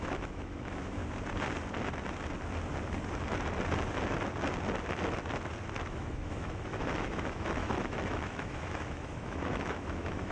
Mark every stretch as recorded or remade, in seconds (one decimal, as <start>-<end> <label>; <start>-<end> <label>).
0.0-1.0 remade; 1.0-5.9 recorded; 5.9-10.3 remade